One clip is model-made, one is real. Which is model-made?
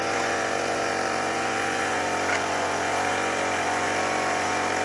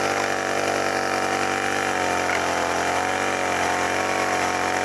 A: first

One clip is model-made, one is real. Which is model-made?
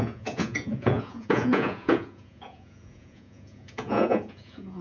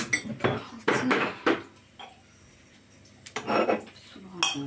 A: first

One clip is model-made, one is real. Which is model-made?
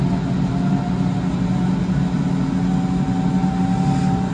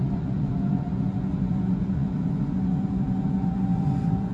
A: second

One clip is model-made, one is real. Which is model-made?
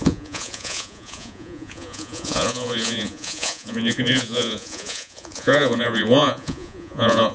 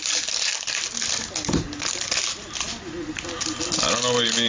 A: first